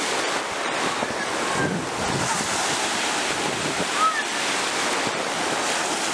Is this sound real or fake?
real